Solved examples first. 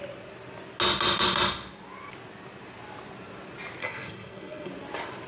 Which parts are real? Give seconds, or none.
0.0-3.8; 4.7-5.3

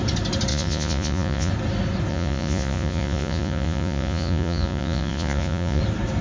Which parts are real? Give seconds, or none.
0.0-0.5; 1.5-2.1; 5.8-6.2

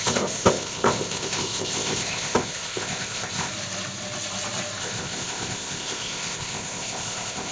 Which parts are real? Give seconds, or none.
3.5-4.8

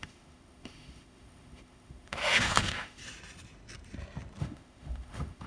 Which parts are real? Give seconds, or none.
3.0-4.4